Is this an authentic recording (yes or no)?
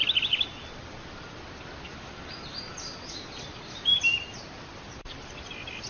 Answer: yes